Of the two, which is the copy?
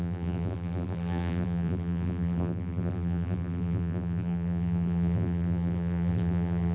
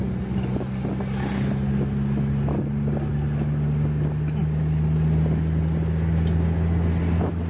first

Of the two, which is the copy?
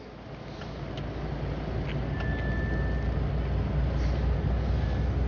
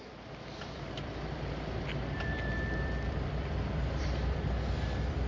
second